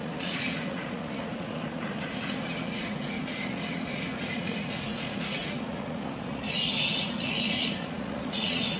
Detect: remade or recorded remade